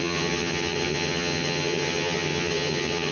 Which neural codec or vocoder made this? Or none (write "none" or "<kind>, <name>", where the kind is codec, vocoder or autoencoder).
vocoder, HiFi-GAN